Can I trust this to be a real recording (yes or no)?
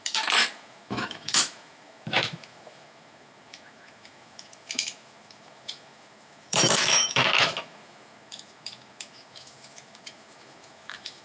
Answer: no